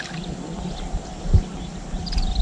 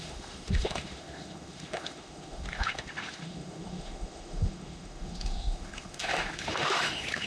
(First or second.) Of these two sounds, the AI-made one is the second